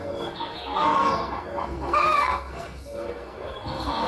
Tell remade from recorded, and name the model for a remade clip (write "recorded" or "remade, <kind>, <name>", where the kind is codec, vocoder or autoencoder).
remade, codec, SNAC